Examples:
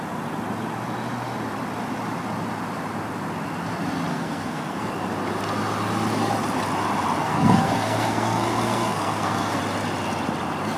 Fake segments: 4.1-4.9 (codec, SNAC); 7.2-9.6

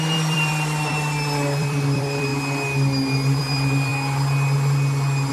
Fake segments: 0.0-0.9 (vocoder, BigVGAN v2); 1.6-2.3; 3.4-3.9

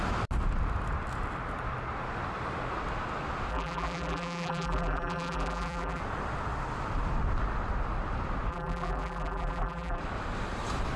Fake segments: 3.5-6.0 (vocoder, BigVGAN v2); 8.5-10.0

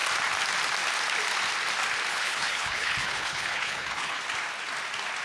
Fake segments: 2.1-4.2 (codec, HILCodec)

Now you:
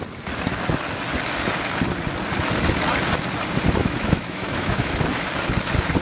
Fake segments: 3.8-4.9 (autoencoder, DAC-VAE)